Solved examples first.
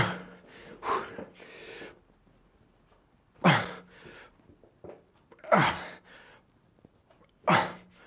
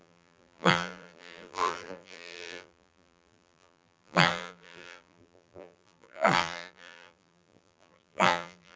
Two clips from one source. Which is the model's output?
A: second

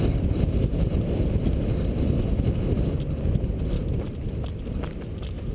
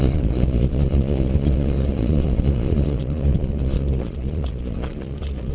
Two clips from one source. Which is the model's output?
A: second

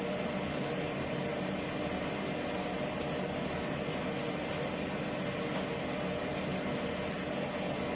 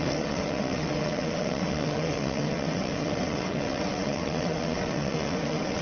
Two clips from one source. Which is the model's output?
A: second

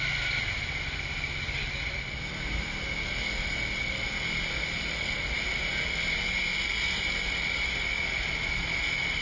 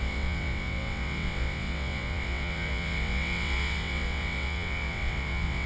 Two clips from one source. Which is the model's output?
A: second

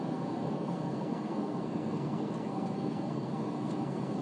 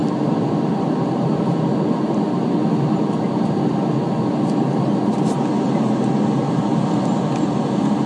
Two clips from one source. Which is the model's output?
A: first